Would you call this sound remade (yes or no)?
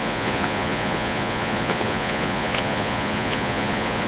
yes